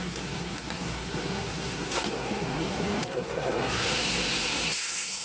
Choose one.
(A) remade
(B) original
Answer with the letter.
A